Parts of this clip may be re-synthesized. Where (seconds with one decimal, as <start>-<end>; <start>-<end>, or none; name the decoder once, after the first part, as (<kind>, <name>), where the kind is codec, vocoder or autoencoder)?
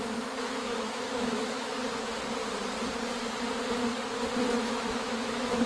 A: 0.0-1.7 (autoencoder, DAC-VAE); 4.5-5.7